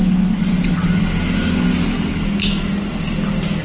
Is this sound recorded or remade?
recorded